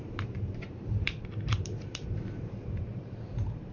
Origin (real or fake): fake